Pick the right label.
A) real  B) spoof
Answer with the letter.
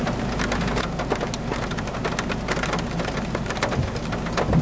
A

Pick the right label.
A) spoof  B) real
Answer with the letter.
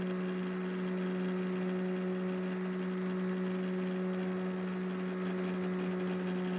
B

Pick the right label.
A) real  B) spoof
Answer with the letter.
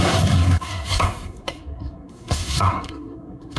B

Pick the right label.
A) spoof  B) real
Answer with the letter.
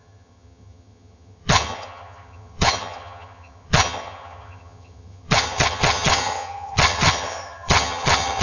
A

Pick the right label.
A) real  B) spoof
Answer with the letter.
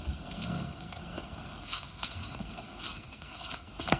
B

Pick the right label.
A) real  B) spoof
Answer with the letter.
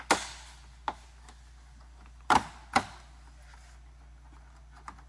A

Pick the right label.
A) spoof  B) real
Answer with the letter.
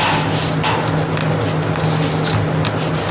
B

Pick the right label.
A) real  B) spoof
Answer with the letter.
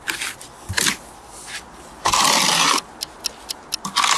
A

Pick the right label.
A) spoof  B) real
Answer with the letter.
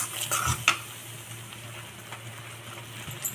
B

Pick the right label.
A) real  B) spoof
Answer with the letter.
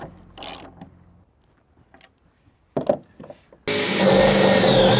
A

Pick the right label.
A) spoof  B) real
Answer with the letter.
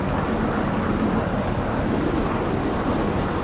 B